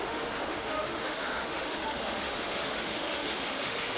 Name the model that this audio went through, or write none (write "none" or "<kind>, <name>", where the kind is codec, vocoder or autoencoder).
autoencoder, DAC-VAE